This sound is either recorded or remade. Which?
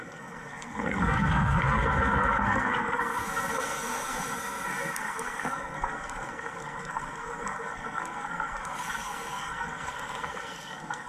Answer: remade